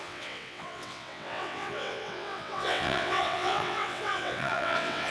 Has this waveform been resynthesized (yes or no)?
yes